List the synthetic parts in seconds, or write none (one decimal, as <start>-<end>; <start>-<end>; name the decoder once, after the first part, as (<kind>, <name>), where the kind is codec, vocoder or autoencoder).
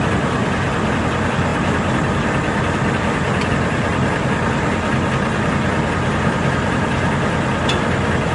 0.0-0.4 (vocoder, BigVGAN v2); 1.0-3.9; 6.8-8.3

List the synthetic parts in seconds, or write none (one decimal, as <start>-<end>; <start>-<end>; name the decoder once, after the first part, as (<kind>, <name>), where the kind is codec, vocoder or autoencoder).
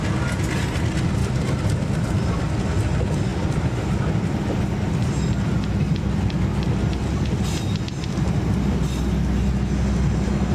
1.2-2.5 (vocoder, BigVGAN v2)